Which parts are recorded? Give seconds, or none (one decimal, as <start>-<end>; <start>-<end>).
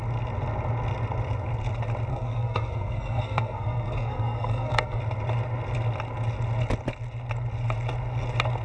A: 0.0-2.1; 5.0-8.6